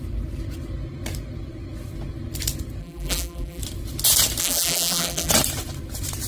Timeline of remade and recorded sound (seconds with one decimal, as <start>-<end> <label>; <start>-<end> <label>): 0.0-2.8 recorded; 2.8-3.6 remade; 3.6-4.4 recorded; 4.4-5.3 remade; 5.3-6.3 recorded